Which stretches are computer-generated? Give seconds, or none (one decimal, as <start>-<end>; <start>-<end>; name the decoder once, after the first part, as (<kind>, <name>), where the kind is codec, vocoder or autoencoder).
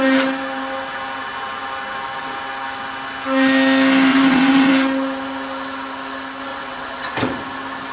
4.1-4.7 (vocoder, WaveNeXt); 6.5-7.4